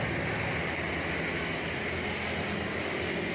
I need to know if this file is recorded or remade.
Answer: recorded